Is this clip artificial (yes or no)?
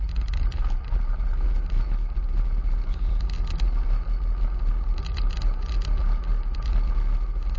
no